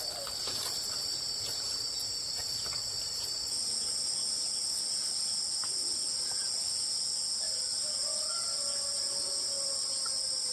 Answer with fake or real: real